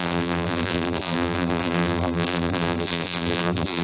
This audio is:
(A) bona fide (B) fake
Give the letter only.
B